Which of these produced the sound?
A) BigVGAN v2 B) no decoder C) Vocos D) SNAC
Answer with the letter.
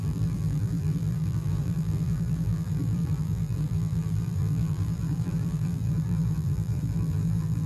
A